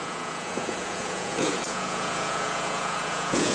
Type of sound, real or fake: fake